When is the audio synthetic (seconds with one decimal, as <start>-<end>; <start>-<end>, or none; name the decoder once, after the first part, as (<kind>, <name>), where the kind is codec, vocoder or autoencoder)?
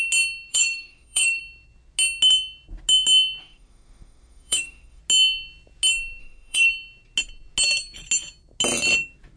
0.5-1.4 (autoencoder, DAC-VAE); 3.4-5.0; 6.2-6.7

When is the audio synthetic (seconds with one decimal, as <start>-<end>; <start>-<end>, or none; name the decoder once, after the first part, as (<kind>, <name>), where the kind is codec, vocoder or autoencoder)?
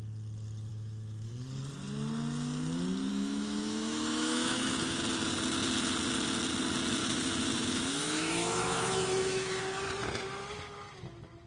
0.7-1.3 (autoencoder, DAC-VAE); 3.1-5.0; 7.0-9.6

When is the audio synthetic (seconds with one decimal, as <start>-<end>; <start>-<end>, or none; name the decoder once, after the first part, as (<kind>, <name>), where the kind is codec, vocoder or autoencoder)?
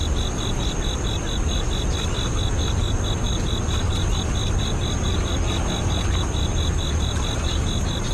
none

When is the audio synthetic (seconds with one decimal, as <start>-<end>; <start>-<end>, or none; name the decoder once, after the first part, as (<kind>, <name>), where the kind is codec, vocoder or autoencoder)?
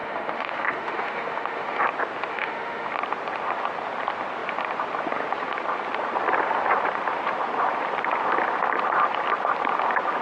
0.0-1.8 (autoencoder, DAC-VAE); 2.3-2.9